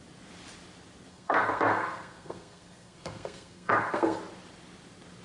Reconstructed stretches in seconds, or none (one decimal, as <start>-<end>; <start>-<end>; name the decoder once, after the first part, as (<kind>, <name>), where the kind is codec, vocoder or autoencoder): 1.1-4.2 (codec, SNAC)